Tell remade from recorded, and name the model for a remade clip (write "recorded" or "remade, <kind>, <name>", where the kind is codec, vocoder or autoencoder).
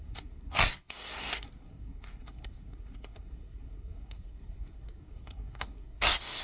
remade, codec, SNAC